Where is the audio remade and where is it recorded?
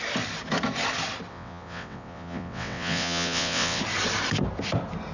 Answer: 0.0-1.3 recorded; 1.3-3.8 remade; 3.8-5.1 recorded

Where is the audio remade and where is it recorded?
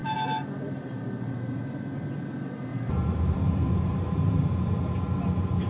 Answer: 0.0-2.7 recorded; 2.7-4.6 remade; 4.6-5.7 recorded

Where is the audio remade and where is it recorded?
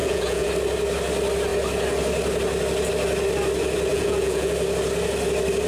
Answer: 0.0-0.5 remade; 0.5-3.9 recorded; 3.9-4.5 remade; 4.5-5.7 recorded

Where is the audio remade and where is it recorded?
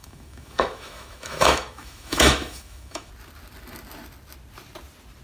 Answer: 0.0-3.1 remade; 3.1-5.2 recorded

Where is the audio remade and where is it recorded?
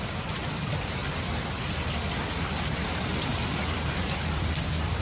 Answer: 0.0-1.0 remade; 1.0-2.7 recorded; 2.7-3.3 remade; 3.3-4.3 recorded; 4.3-5.0 remade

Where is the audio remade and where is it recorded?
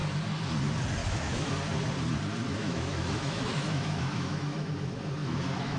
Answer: 0.0-1.0 recorded; 1.0-1.5 remade; 1.5-2.5 recorded; 2.5-4.7 remade; 4.7-5.2 recorded; 5.2-5.8 remade